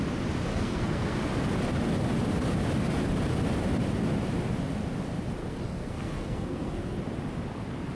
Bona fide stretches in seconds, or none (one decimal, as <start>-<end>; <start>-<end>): 0.0-0.5; 1.2-5.4; 7.0-7.9